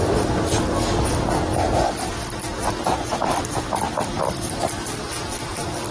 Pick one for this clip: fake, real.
real